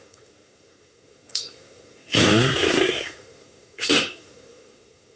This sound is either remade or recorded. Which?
remade